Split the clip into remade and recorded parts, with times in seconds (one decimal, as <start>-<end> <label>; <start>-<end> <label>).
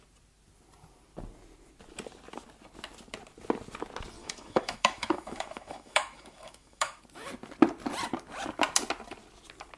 0.0-4.2 recorded; 4.2-7.0 remade; 7.0-9.8 recorded